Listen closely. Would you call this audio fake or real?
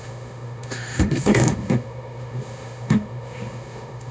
fake